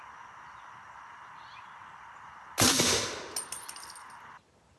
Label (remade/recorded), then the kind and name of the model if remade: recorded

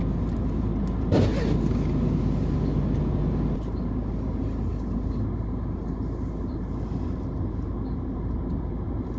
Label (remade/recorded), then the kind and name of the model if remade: recorded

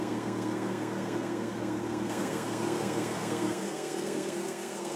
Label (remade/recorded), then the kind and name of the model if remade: remade, codec, SNAC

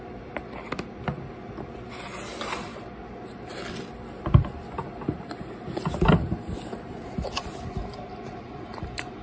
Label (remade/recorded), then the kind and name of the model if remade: recorded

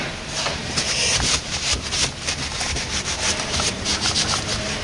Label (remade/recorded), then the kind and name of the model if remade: remade, vocoder, BigVGAN v2